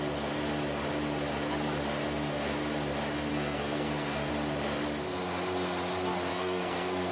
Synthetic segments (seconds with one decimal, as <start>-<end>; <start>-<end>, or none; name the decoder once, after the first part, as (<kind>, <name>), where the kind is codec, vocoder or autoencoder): 3.3-4.3 (codec, SNAC); 6.3-7.1